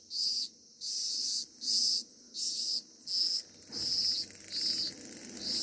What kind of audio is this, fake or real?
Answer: real